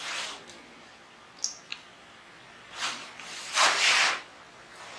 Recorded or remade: recorded